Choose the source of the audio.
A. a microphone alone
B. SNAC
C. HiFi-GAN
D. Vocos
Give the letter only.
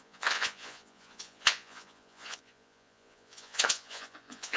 D